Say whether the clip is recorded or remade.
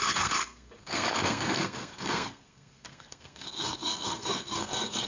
remade